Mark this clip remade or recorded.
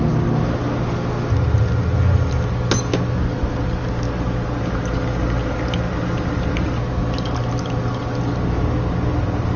recorded